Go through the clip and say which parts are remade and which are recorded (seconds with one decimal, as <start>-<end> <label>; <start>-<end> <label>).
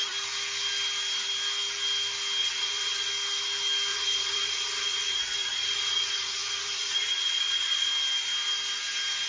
0.0-2.4 recorded; 2.4-3.1 remade; 3.1-3.9 recorded; 3.9-7.9 remade; 7.9-9.3 recorded